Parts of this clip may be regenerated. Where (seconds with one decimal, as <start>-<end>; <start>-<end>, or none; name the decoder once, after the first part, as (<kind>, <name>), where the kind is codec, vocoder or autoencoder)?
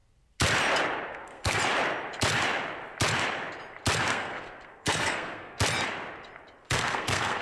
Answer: 1.1-1.6 (codec, SNAC); 4.1-5.6; 6.6-7.4